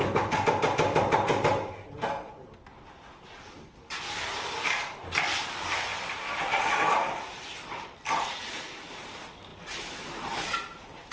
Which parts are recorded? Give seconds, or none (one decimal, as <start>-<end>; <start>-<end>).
0.0-2.7; 5.4-5.9; 8.6-11.1

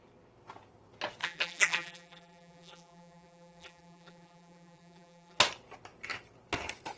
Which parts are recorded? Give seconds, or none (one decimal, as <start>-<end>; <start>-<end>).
0.0-1.2; 5.4-7.0

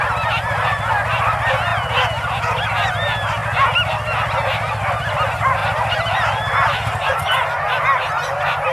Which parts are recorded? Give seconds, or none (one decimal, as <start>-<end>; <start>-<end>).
0.0-8.7